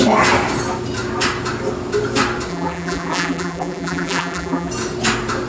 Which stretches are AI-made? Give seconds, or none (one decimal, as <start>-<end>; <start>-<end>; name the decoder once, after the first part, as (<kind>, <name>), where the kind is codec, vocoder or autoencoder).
2.5-4.7 (vocoder, BigVGAN v2)